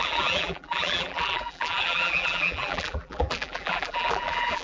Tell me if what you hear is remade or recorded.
remade